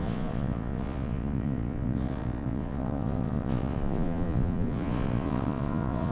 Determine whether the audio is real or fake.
fake